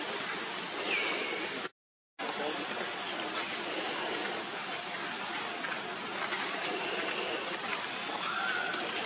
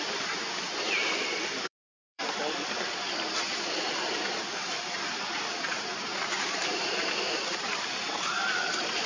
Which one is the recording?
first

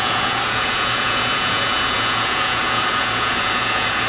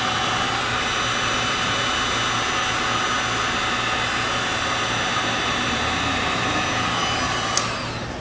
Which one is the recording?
second